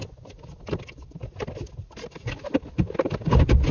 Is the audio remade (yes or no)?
no